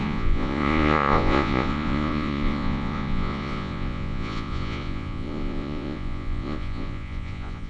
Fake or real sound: fake